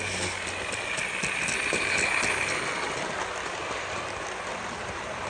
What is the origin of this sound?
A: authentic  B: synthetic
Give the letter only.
A